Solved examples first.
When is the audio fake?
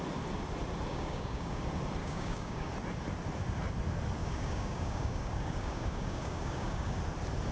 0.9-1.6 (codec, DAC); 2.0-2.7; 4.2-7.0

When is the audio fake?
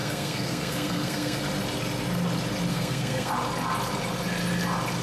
0.0-1.4 (codec, SNAC); 2.7-3.3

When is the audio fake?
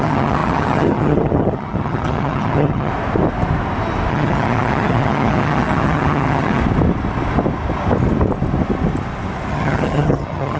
0.0-2.9 (vocoder, HiFi-GAN); 4.1-6.6; 9.5-10.6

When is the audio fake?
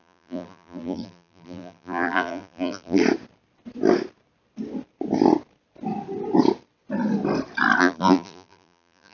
0.0-3.0 (vocoder, BigVGAN v2); 7.8-9.1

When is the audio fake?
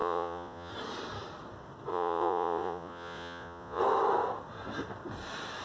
0.0-0.7 (vocoder, Vocos); 1.9-3.8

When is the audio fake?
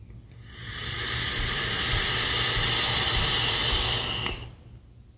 none